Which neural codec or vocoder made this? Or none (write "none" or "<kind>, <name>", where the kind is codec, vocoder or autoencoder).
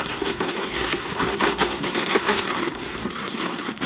codec, SNAC